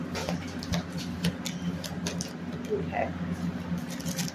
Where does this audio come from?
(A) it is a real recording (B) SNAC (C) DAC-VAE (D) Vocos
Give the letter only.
A